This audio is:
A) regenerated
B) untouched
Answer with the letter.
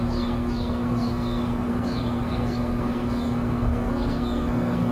A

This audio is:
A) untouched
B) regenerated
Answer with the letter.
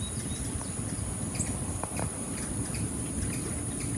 A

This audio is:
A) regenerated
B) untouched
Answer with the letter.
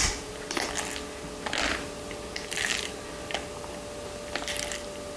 B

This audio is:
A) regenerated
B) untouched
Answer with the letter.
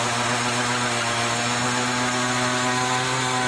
B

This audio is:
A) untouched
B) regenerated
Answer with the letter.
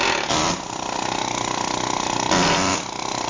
A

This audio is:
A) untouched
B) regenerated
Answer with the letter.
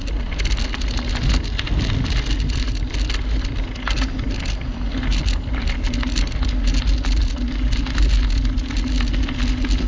A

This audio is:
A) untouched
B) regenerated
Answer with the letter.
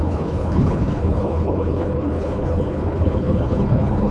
B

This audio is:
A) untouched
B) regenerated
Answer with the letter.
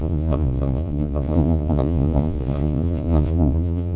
B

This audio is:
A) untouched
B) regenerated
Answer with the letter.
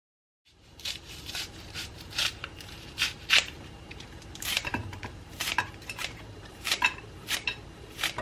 B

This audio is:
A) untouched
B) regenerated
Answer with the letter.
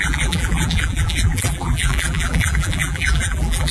B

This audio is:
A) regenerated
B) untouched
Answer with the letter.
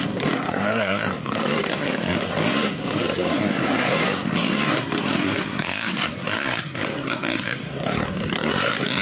A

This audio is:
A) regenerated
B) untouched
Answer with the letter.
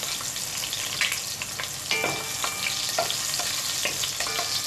B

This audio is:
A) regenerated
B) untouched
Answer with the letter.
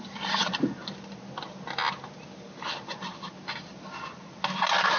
B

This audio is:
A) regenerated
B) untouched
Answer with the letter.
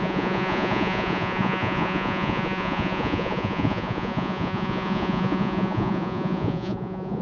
A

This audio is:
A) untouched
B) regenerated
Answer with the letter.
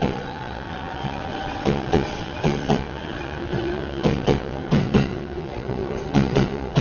B